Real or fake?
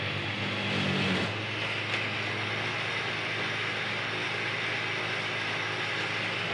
real